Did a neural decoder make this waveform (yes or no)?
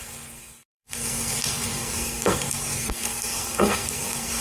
yes